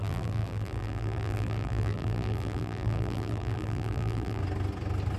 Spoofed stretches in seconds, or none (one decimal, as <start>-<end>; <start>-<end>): 0.0-4.4